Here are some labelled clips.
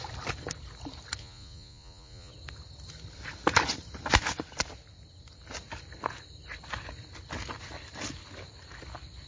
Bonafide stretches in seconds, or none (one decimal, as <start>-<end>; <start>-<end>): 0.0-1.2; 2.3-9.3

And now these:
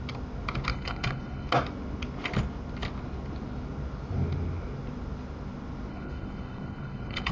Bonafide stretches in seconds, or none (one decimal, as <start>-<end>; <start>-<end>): 0.0-0.7; 1.5-5.9

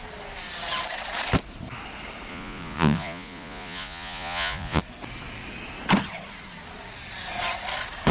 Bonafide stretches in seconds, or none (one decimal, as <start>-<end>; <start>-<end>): 0.0-2.3; 4.8-8.1

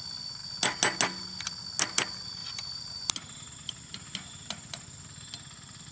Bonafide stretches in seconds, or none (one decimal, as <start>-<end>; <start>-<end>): 0.0-5.9

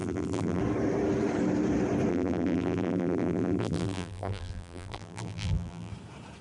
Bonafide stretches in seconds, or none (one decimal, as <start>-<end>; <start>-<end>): 0.6-2.1; 5.9-6.4